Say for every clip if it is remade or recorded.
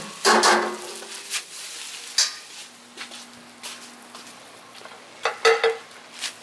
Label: recorded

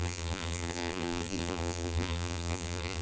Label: remade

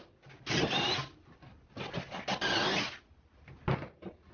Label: recorded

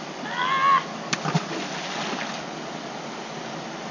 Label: recorded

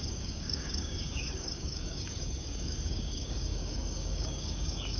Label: remade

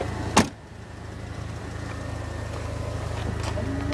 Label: recorded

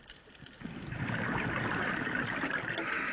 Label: recorded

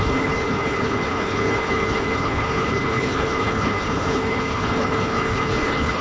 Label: remade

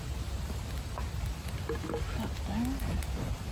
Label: recorded